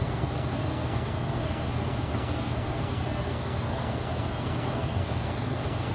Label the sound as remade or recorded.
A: remade